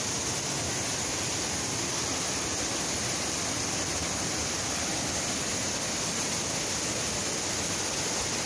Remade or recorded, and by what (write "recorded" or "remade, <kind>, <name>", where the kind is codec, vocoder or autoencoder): recorded